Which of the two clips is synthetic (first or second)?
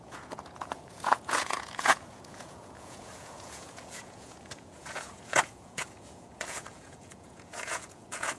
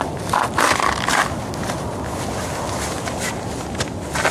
first